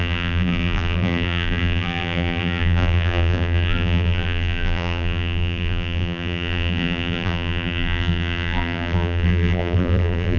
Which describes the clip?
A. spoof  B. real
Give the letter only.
A